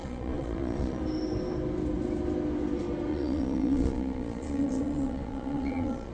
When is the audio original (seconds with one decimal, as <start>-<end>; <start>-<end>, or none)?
1.0-3.1